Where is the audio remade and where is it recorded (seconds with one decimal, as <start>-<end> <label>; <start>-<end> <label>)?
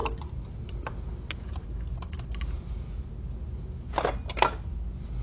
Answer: 0.0-5.2 recorded